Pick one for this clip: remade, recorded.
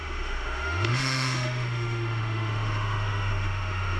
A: remade